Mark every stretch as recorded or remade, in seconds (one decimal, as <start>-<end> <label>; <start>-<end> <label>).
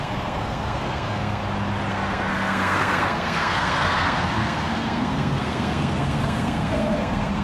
0.0-1.4 remade; 1.4-1.9 recorded; 1.9-7.4 remade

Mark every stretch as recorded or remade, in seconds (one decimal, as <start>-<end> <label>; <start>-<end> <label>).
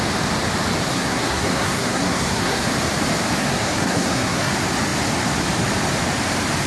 0.0-0.9 recorded; 0.9-2.6 remade; 2.6-3.4 recorded; 3.4-4.5 remade; 4.5-6.7 recorded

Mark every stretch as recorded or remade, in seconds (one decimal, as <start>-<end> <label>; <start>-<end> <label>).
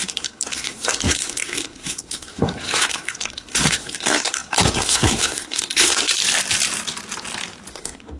0.0-6.2 remade; 6.2-7.7 recorded; 7.7-8.2 remade